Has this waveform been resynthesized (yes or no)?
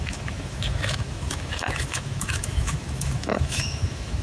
yes